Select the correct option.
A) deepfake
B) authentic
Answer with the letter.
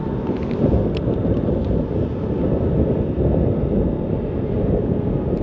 B